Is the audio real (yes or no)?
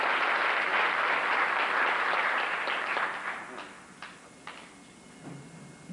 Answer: yes